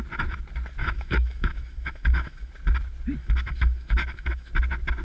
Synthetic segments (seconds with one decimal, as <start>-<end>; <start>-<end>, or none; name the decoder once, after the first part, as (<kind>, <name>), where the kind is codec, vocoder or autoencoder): 0.8-2.5 (autoencoder, DAC-VAE); 3.2-4.5